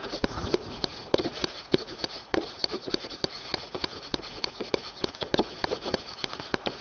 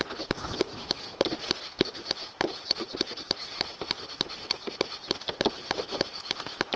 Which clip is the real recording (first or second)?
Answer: second